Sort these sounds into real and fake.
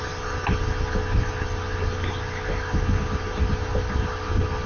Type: real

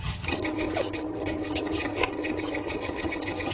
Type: fake